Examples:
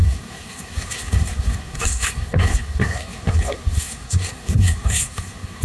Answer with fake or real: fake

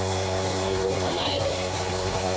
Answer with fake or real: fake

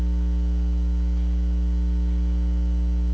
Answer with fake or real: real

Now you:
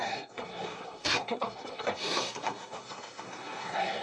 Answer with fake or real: fake